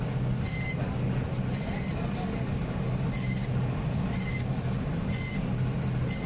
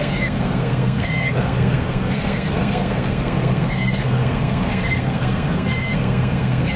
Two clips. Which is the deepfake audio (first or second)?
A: second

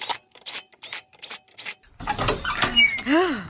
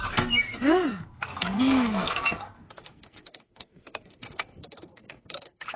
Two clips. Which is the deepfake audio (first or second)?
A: second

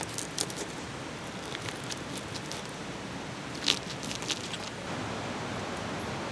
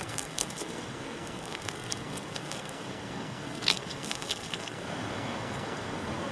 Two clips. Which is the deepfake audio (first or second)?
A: second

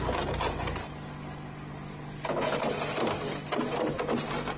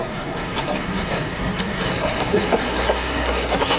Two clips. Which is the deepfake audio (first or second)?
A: second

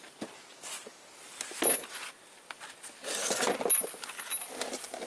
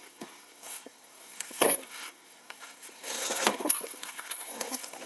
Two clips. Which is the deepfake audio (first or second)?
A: second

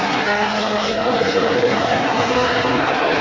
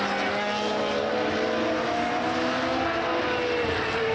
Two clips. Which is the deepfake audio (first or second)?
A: first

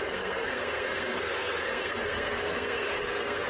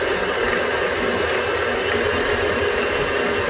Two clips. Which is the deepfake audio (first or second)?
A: first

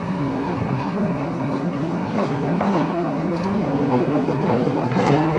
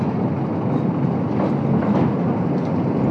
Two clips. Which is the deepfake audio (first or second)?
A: first